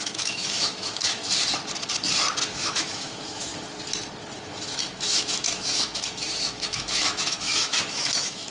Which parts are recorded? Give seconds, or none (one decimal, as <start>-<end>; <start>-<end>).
1.2-2.5; 3.5-4.4